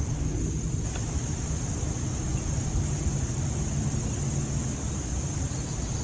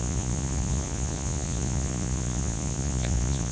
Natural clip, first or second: first